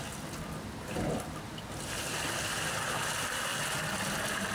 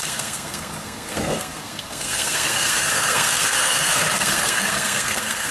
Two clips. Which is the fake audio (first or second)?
second